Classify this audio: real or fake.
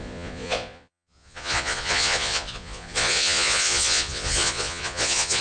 fake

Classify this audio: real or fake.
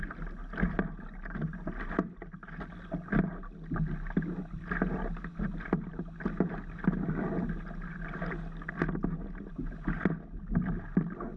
real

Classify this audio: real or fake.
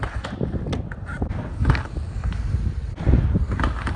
real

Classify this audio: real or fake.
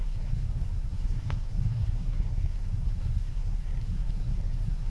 fake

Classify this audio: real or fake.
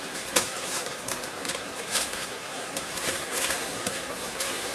fake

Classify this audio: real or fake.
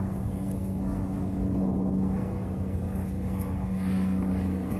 fake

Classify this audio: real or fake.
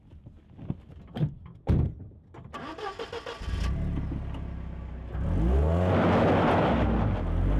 real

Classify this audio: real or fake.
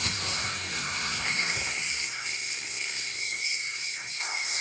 fake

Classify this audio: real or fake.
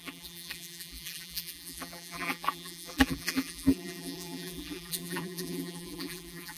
fake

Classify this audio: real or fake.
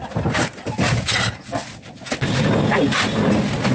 real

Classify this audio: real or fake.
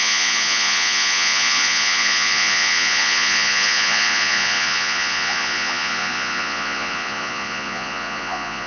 fake